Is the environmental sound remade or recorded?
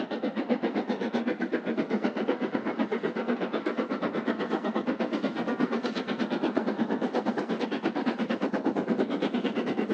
remade